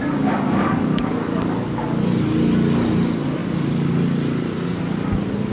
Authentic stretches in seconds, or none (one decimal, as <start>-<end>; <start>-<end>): 2.0-3.4; 3.9-5.5